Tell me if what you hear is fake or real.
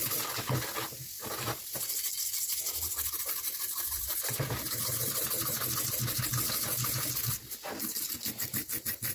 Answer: real